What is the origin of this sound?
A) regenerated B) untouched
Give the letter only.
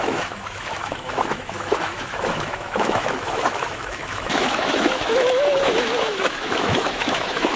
A